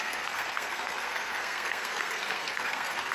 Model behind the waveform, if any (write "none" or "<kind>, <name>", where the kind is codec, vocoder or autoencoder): codec, SNAC